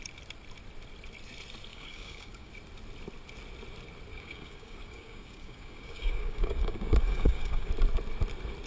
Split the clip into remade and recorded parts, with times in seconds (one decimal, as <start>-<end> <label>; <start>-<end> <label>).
0.0-1.7 recorded; 1.7-2.5 remade; 2.5-4.1 recorded; 4.1-7.7 remade; 7.7-8.7 recorded